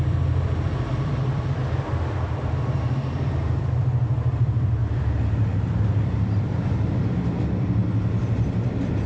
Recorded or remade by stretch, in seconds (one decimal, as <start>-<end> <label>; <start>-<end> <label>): 0.0-7.8 remade; 7.8-9.1 recorded